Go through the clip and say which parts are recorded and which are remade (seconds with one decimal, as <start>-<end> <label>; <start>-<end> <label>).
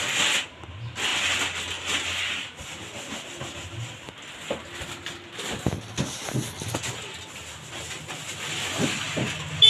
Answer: 0.0-9.7 recorded